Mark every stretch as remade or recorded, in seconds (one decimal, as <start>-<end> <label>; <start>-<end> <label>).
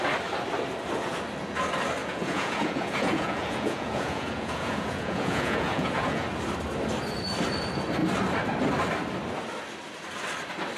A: 0.0-2.0 recorded; 2.0-6.2 remade; 6.2-10.8 recorded